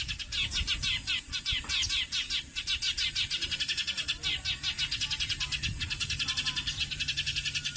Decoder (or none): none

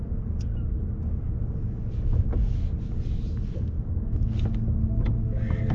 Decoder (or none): none